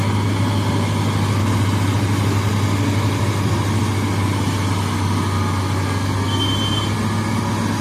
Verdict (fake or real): real